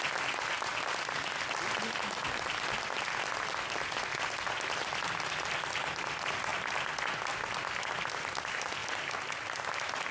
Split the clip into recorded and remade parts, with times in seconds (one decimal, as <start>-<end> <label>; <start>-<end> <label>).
0.0-10.1 recorded